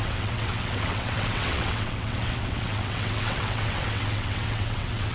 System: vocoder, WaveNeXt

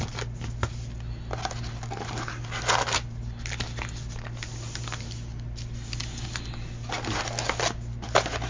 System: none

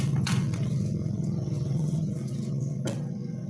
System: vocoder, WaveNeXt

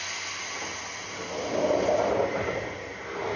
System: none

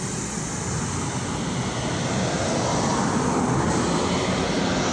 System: none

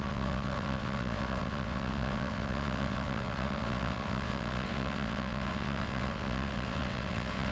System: vocoder, WaveNeXt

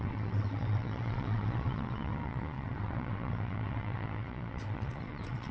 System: vocoder, WaveNeXt